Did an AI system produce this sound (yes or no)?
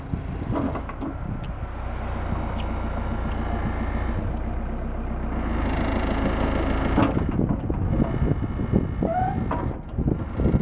no